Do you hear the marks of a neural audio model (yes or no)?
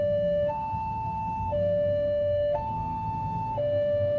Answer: yes